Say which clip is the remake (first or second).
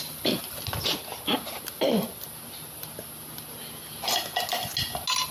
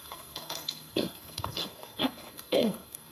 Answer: second